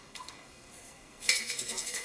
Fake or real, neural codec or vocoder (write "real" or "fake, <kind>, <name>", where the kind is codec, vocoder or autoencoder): fake, codec, SNAC